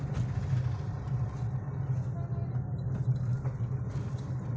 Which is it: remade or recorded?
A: recorded